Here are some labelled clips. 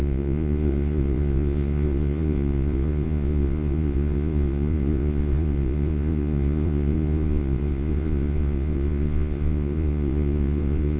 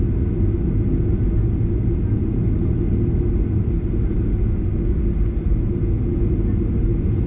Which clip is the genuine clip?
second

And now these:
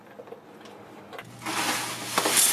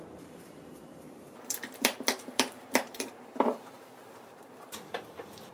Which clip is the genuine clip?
first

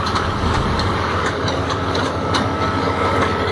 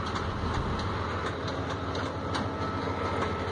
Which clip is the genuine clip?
second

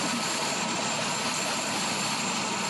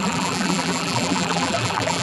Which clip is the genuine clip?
first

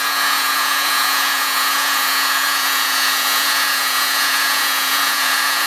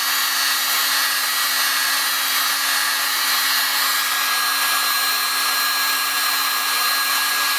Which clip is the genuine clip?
second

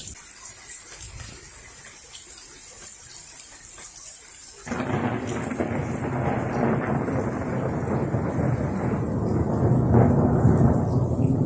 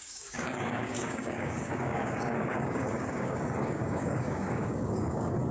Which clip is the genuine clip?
first